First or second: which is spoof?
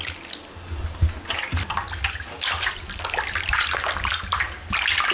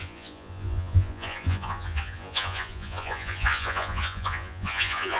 second